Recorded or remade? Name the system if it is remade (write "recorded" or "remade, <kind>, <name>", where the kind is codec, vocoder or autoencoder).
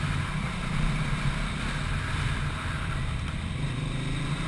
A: recorded